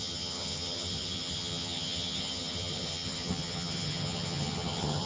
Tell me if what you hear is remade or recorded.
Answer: remade